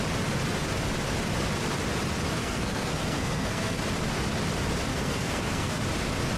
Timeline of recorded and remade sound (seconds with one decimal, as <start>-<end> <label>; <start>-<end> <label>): 0.0-2.4 recorded; 2.4-3.8 remade; 3.8-4.9 recorded; 4.9-5.8 remade; 5.8-6.4 recorded